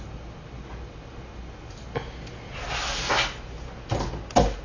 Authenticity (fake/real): real